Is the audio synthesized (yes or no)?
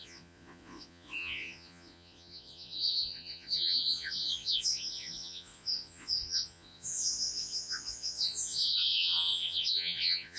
yes